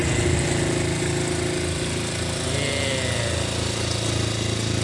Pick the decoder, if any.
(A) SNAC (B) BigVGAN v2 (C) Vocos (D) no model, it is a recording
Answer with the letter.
D